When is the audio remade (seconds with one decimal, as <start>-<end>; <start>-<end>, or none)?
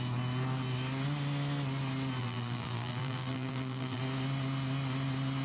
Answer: 2.2-4.0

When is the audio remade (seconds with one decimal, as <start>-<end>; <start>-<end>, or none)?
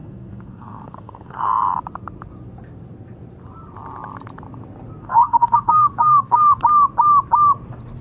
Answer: 0.0-1.5; 5.0-6.6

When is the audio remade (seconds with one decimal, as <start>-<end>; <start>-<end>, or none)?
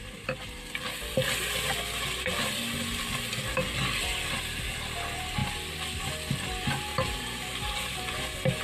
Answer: 6.9-8.0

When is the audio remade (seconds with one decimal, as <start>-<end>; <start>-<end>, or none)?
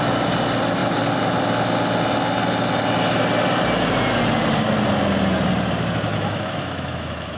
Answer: 6.1-7.4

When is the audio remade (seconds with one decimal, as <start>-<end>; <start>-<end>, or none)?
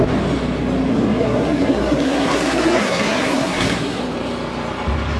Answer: 0.9-4.0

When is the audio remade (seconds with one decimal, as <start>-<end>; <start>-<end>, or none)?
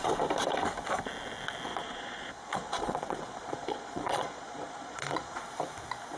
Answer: 1.7-5.4